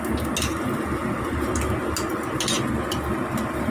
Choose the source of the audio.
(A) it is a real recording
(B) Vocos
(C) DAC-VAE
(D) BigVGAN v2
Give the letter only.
A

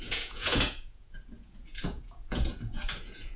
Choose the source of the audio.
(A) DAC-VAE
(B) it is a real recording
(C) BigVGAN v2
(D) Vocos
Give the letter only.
D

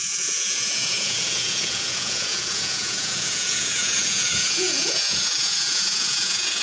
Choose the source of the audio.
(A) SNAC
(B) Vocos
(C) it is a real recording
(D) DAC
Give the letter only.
B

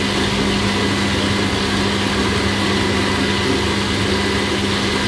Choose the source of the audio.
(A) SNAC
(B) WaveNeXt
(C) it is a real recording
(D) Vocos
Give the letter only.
C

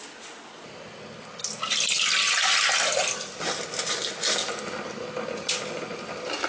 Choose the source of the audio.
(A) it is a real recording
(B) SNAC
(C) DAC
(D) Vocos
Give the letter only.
A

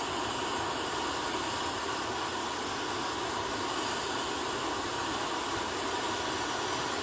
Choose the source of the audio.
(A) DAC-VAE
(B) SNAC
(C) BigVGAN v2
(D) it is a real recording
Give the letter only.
D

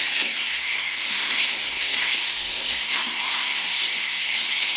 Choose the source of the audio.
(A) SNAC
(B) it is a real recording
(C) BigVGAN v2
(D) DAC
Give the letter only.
A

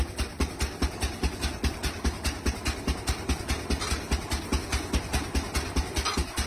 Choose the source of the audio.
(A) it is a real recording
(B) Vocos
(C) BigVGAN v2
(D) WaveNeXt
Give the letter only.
A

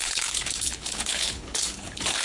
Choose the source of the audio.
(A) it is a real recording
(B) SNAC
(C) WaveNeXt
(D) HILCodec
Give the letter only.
D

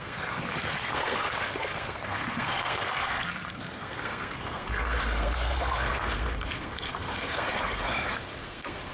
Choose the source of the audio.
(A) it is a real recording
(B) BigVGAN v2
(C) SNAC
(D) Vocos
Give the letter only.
C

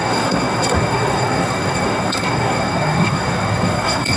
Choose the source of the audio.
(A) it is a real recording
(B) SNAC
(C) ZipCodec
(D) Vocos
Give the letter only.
B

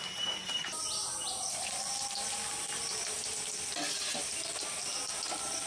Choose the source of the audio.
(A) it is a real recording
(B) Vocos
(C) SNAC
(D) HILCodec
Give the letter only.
A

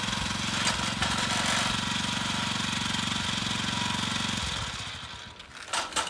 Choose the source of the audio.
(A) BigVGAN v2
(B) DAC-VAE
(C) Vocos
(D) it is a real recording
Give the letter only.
D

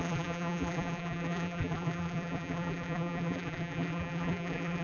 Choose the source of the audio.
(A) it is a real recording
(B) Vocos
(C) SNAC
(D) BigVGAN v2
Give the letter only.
D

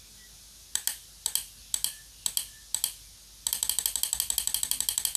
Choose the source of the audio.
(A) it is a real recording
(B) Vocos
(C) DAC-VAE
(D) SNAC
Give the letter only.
A